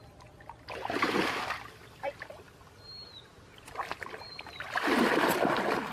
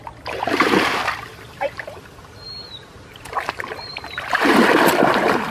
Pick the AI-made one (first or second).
second